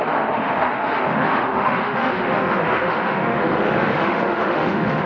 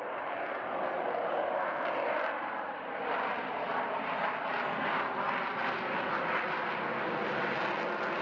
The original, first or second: second